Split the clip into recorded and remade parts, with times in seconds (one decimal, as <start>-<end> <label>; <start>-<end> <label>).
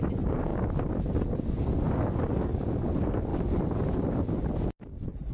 0.0-5.3 recorded